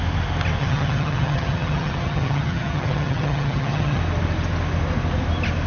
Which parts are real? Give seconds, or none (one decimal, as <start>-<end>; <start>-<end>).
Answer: 0.0-0.6; 4.0-5.7